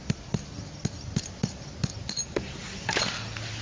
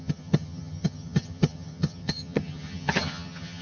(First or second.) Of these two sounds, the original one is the first